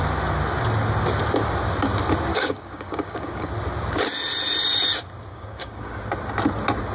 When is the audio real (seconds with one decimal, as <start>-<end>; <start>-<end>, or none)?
0.0-2.3; 3.5-5.3; 5.9-6.9